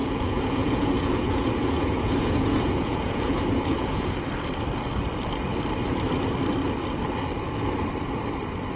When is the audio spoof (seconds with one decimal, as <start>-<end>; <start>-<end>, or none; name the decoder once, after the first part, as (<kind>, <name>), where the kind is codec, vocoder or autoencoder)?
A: 0.0-4.2 (vocoder, Vocos)